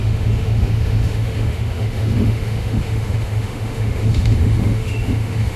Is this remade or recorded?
remade